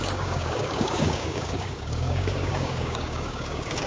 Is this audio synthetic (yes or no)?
yes